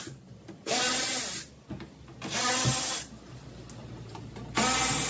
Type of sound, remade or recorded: recorded